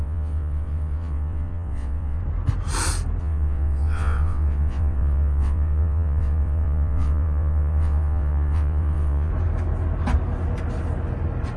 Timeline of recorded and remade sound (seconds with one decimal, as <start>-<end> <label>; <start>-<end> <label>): 0.0-2.2 remade; 2.2-3.2 recorded; 3.2-9.3 remade; 9.3-11.6 recorded